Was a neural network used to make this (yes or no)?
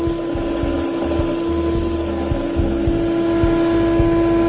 no